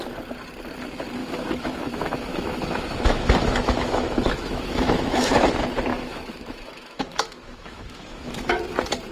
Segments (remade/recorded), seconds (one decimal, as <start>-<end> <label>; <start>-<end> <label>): 0.0-1.2 recorded; 1.2-5.3 remade; 5.3-5.9 recorded; 5.9-8.6 remade; 8.6-9.1 recorded

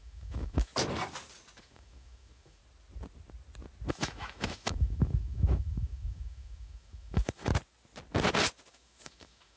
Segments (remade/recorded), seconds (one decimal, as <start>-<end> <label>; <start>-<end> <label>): 0.0-0.7 remade; 0.7-1.6 recorded; 1.6-2.6 remade; 2.6-3.9 recorded; 3.9-7.5 remade; 7.5-8.7 recorded; 8.7-9.6 remade

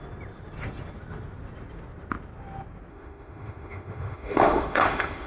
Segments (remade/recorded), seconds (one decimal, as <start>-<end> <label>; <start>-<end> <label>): 0.0-2.9 recorded; 2.9-5.3 remade

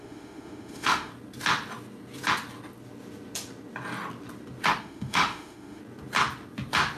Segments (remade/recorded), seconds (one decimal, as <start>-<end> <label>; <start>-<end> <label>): 0.0-1.1 remade; 1.1-4.8 recorded; 4.8-5.8 remade; 5.8-7.0 recorded

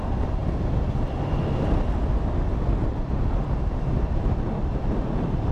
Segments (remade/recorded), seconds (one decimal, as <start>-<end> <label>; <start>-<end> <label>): 0.0-5.5 recorded

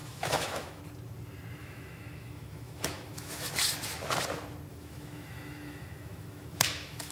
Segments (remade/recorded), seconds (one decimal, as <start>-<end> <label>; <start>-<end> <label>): 0.0-0.8 remade; 0.8-1.6 recorded; 1.6-3.5 remade; 3.5-4.7 recorded; 4.7-7.1 remade

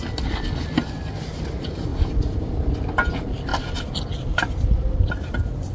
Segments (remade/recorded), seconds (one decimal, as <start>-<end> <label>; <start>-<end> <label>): 0.0-5.7 recorded

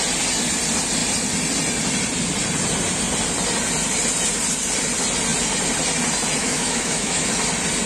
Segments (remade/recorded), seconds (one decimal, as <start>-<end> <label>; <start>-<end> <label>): 0.0-6.4 recorded; 6.4-7.3 remade; 7.3-7.9 recorded